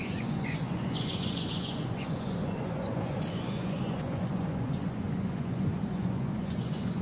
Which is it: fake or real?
fake